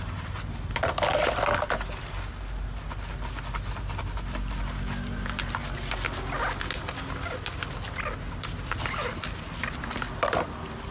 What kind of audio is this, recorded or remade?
recorded